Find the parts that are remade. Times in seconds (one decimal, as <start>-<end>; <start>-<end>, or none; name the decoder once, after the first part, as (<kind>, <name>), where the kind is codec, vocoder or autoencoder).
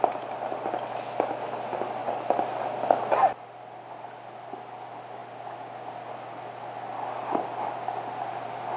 none